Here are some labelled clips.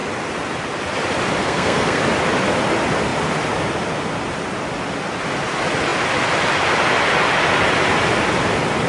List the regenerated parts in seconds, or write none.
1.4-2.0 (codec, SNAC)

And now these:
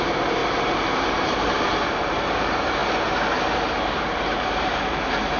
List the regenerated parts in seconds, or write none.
0.0-2.8 (vocoder, BigVGAN v2); 3.4-5.4

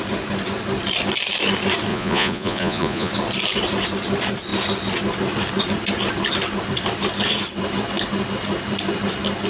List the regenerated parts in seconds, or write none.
1.9-3.1 (vocoder, Vocos)

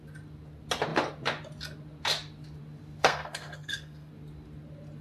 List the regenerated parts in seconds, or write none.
3.0-4.1 (codec, SNAC)

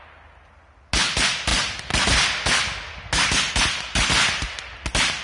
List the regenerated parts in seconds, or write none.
none

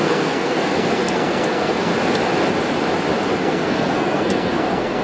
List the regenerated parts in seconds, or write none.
0.0-1.9 (codec, SNAC); 3.3-5.0

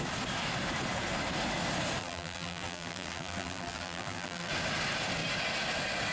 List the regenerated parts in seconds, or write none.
2.0-4.5 (vocoder, BigVGAN v2)